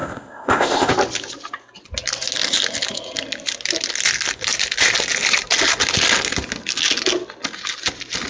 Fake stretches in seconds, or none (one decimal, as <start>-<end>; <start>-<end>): 0.0-0.9